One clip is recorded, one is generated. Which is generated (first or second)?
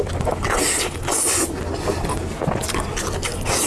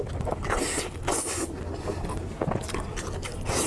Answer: second